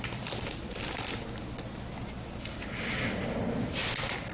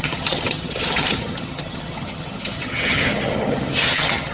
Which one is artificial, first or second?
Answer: second